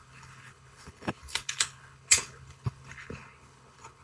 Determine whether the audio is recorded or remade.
remade